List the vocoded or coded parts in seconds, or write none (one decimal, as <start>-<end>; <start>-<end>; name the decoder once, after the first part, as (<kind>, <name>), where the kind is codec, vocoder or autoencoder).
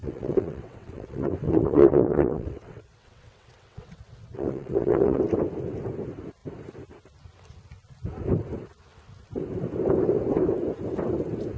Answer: 0.0-5.2 (vocoder, WaveNeXt)